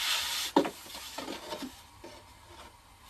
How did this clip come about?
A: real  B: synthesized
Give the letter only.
A